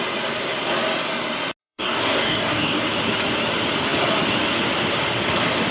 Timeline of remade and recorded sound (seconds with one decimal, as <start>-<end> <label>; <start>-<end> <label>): 0.0-1.6 recorded; 1.6-2.8 remade; 2.8-5.7 recorded